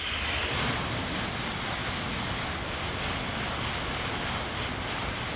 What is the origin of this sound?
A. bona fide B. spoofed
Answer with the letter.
A